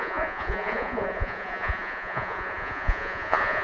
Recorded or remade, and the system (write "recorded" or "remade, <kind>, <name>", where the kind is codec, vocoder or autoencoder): remade, vocoder, Vocos